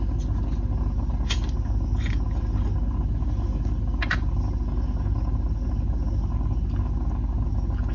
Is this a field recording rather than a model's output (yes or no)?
yes